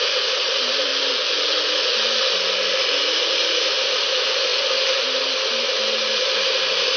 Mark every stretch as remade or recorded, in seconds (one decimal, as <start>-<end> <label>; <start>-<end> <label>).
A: 0.0-0.9 remade; 0.9-3.3 recorded; 3.3-4.5 remade; 4.5-5.2 recorded; 5.2-7.0 remade